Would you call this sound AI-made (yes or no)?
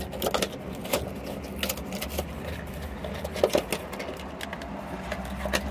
no